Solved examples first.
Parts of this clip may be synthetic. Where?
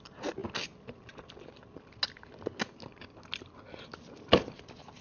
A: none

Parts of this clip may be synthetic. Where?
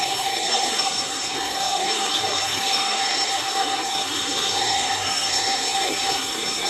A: 0.0-6.7 (codec, SNAC)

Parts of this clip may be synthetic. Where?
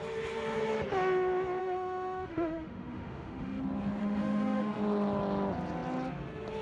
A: 1.6-3.6 (autoencoder, DAC-VAE); 4.0-4.8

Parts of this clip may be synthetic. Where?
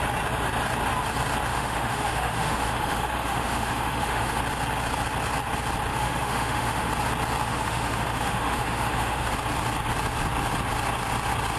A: 1.5-4.4 (autoencoder, DAC-VAE); 5.9-6.9; 7.4-9.3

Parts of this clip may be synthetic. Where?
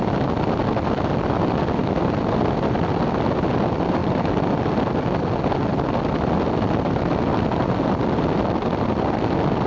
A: none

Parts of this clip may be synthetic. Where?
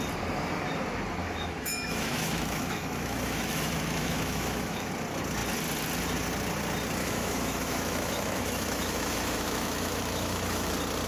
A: 1.2-4.9 (autoencoder, DAC-VAE); 7.0-10.7